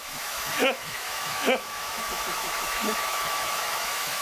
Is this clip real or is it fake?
fake